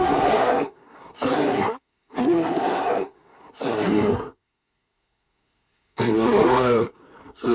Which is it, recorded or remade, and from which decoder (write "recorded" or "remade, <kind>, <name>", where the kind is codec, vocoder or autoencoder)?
remade, codec, SNAC